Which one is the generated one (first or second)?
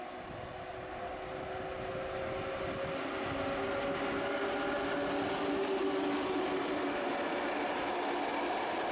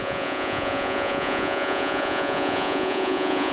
second